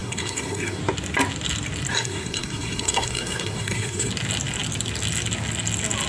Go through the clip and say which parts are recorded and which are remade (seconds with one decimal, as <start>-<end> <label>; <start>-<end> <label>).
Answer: 0.0-0.8 remade; 0.8-1.9 recorded; 1.9-4.1 remade; 4.1-6.1 recorded

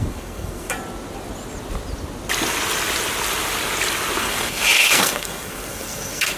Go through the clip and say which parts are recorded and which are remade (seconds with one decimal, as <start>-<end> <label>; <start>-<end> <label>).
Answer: 0.0-0.7 remade; 0.7-4.2 recorded; 4.2-6.4 remade

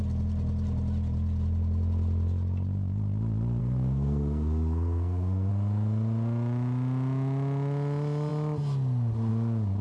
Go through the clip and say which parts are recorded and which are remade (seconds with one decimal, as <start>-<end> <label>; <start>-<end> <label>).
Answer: 0.0-3.6 recorded; 3.6-5.5 remade; 5.5-9.8 recorded

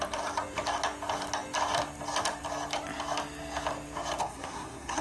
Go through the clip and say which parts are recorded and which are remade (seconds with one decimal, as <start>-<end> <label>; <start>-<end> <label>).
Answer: 0.0-4.2 recorded; 4.2-5.0 remade